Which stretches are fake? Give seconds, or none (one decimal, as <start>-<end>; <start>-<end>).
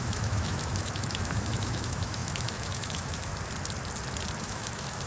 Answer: 0.0-3.3; 4.4-5.1